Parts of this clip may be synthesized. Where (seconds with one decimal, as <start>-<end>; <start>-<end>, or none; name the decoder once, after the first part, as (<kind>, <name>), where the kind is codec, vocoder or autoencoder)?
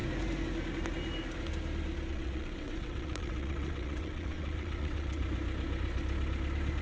2.1-5.2 (vocoder, WaveNeXt)